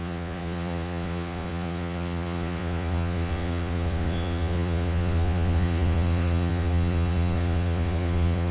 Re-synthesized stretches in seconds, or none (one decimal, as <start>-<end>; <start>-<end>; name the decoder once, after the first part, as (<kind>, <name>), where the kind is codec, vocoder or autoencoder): 0.0-8.5 (vocoder, Vocos)